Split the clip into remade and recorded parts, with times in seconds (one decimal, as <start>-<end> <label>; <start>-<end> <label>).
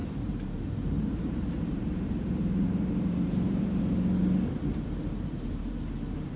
0.0-3.8 remade; 3.8-4.7 recorded; 4.7-5.6 remade; 5.6-6.4 recorded